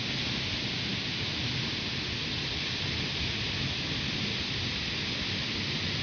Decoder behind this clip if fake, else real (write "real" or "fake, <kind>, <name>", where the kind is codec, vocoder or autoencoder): real